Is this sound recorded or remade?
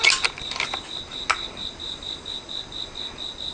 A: recorded